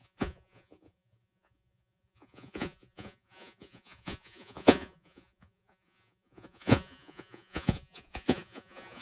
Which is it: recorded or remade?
remade